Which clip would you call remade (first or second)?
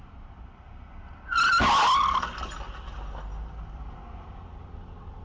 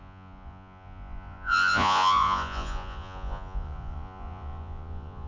second